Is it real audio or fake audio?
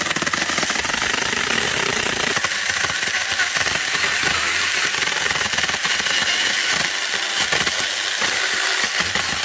real